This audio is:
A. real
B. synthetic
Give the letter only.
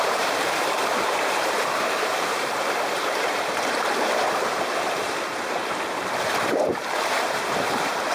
B